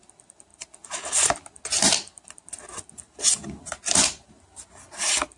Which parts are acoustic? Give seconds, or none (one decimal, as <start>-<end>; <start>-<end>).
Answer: 0.0-5.4